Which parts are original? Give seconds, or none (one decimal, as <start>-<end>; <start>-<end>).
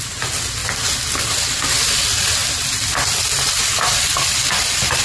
0.0-5.0